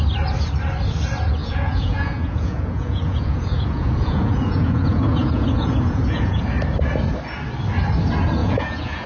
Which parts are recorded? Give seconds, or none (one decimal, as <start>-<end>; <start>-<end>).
0.0-1.4; 6.4-8.4

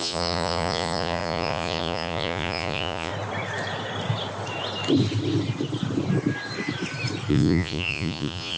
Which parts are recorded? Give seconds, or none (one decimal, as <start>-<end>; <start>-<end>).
3.1-7.3